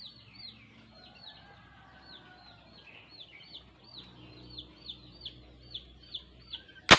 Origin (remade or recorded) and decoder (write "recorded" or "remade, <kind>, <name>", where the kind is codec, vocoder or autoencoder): recorded